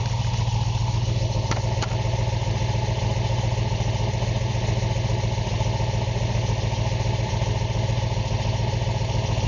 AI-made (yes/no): no